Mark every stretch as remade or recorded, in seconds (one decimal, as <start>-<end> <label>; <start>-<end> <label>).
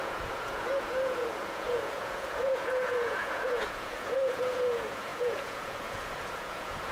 0.0-6.9 remade